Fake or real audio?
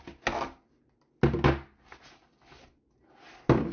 real